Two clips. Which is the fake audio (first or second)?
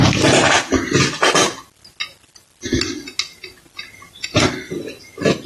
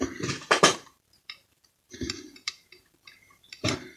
second